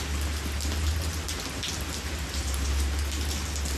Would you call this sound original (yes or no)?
yes